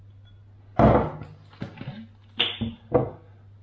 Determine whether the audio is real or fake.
real